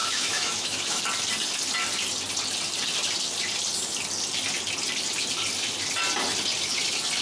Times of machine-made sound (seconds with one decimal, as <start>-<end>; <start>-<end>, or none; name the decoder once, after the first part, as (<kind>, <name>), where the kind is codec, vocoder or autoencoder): 0.0-1.0 (autoencoder, DAC-VAE)

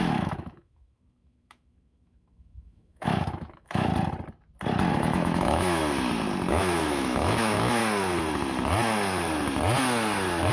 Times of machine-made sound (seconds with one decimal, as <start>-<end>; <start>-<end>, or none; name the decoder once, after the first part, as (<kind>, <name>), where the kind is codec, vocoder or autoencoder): 0.0-3.9 (autoencoder, DAC-VAE); 4.9-5.8; 6.5-7.8

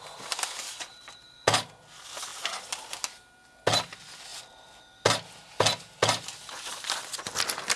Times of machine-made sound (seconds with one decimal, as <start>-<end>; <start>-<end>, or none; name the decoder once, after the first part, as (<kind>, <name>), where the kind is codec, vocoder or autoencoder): none

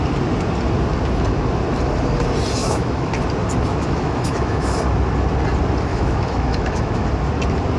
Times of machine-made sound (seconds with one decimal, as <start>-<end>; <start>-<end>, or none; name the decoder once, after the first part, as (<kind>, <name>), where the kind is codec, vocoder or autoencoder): 2.6-3.1 (autoencoder, DAC-VAE); 3.7-4.8; 5.9-7.1

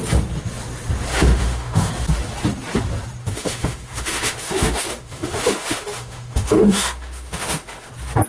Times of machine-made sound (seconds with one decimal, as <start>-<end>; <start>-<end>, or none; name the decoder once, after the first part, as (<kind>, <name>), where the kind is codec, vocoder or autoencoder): 1.1-1.9 (autoencoder, DAC-VAE); 3.2-7.9

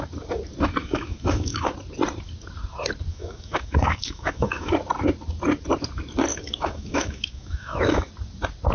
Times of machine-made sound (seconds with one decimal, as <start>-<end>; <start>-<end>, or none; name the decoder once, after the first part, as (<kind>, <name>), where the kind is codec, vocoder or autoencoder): 0.8-1.7 (autoencoder, DAC-VAE); 3.1-4.7; 6.3-8.1

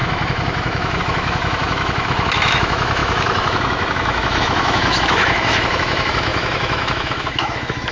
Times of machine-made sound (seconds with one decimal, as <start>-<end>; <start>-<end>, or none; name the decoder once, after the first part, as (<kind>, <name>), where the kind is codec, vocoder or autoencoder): 0.0-7.9 (autoencoder, DAC-VAE)